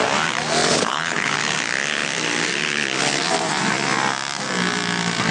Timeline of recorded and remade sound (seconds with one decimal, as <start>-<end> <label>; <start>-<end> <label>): 0.0-0.7 recorded; 0.7-1.3 remade; 1.3-5.3 recorded